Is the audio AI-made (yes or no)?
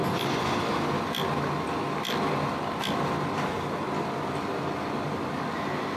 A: no